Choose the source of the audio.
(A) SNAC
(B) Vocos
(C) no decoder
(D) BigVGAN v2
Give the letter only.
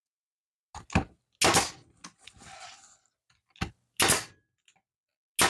C